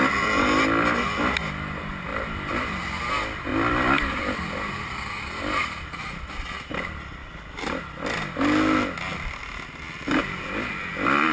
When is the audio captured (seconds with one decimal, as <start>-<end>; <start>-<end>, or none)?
0.0-2.1; 3.0-3.5; 6.0-10.2; 10.9-11.3